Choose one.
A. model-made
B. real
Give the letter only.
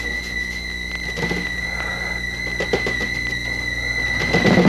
B